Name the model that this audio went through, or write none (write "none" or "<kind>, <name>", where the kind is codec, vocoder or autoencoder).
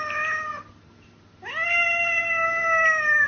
none